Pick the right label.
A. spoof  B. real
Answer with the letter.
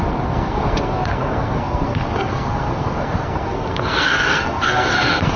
A